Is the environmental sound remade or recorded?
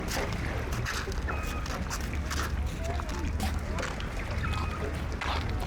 recorded